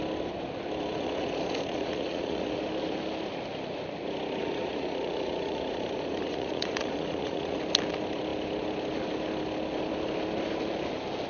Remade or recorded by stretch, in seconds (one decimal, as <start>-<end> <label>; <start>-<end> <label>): 0.0-0.9 recorded; 0.9-2.6 remade; 2.6-4.4 recorded; 4.4-7.6 remade; 7.6-11.3 recorded